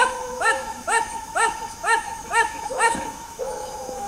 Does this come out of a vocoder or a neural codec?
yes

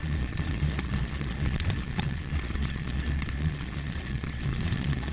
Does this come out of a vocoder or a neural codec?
yes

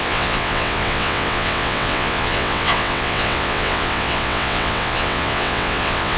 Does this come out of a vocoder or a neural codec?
yes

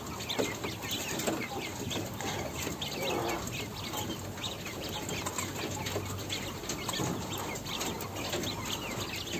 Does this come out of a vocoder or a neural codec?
no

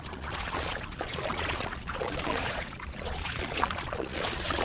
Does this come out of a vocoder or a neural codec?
yes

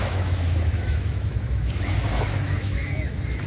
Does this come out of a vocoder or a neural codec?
yes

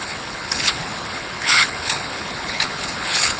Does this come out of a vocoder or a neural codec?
yes